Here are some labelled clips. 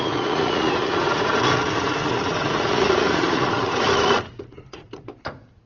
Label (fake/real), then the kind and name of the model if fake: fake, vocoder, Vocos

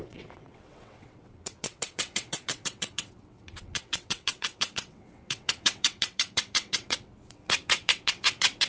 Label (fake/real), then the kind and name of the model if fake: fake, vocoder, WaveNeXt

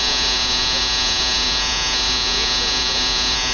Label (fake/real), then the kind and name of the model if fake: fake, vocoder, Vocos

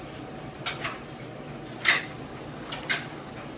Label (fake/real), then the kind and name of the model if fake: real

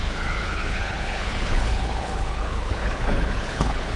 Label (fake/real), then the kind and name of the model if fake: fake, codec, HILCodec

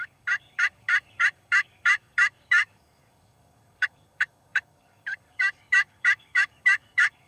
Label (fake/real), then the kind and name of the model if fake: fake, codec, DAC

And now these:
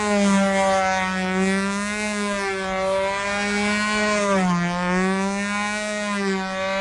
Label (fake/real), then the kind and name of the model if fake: real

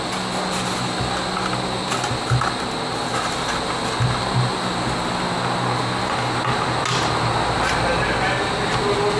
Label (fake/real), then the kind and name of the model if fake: real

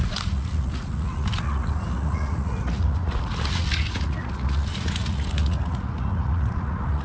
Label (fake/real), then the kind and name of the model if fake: fake, vocoder, Vocos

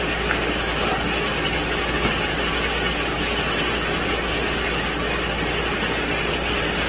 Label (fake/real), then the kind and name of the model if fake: real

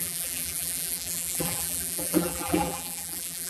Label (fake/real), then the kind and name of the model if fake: fake, vocoder, BigVGAN v2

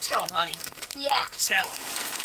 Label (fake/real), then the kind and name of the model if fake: fake, codec, SNAC